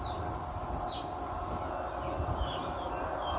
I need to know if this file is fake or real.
real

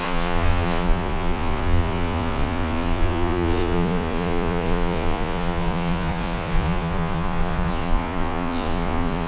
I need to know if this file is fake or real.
fake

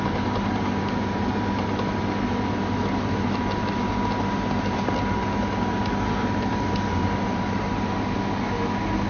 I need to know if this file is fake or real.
real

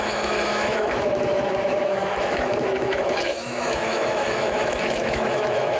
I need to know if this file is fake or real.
fake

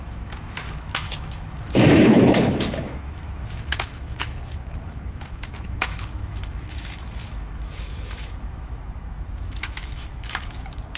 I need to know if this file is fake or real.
fake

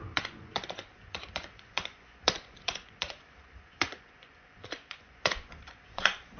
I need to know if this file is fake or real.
fake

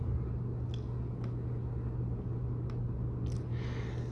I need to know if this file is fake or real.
real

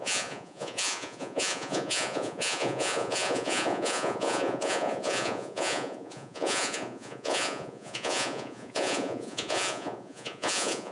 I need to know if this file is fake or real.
fake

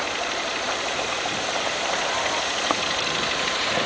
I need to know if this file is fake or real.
fake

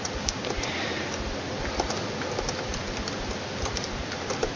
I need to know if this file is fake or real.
real